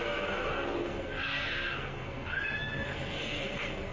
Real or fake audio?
fake